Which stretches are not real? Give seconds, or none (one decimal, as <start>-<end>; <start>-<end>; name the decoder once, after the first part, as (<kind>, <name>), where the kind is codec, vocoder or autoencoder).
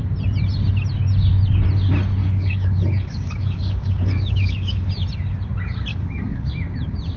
2.2-4.9 (codec, DAC); 5.9-6.5